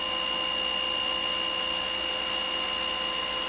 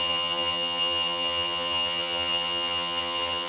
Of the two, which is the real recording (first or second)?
first